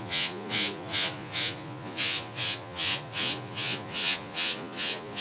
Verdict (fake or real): fake